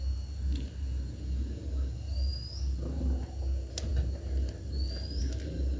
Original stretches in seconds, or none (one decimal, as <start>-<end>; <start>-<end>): 0.0-5.8